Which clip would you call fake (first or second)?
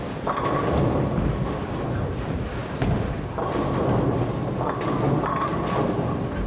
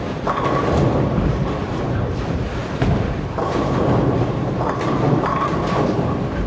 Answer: second